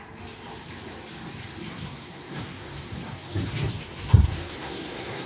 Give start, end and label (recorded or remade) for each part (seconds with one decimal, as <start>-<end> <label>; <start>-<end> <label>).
0.0-1.7 recorded; 1.7-5.3 remade